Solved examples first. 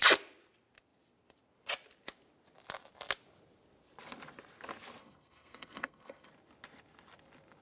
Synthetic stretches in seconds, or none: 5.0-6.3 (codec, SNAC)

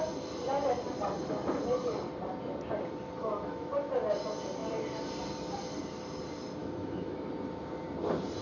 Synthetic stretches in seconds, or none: 3.2-3.7 (autoencoder, DAC-VAE); 6.6-7.3